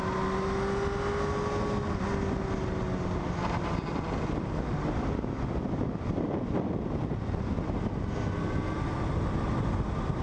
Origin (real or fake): real